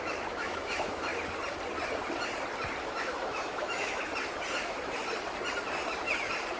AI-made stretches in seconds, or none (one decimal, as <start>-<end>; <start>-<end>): 0.0-1.1; 2.8-4.1; 4.6-5.0